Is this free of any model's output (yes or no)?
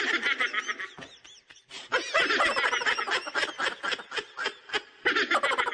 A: yes